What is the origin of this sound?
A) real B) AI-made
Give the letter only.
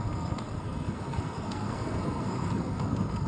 B